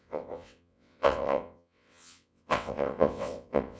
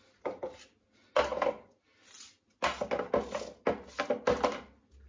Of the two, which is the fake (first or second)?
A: first